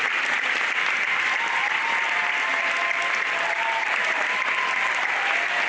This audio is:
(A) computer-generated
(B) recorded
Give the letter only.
B